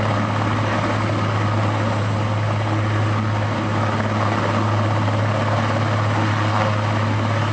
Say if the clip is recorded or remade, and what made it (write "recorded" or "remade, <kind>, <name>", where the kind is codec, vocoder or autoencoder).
recorded